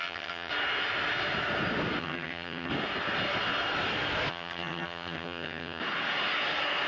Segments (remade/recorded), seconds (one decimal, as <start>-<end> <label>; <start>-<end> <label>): 0.0-0.5 remade; 0.5-2.0 recorded; 2.0-2.7 remade; 2.7-4.3 recorded; 4.3-5.8 remade; 5.8-6.9 recorded